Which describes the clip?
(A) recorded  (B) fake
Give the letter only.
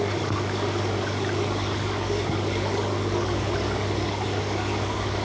B